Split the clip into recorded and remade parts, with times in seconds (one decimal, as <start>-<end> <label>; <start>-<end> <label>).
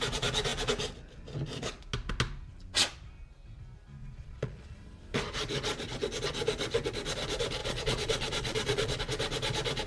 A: 0.0-4.0 recorded; 4.0-4.7 remade; 4.7-7.6 recorded; 7.6-9.0 remade; 9.0-9.9 recorded